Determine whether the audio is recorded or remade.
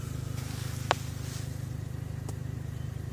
recorded